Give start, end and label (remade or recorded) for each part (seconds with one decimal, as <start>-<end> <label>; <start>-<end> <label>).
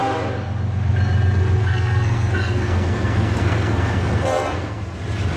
0.0-1.6 recorded; 1.6-4.8 remade; 4.8-5.4 recorded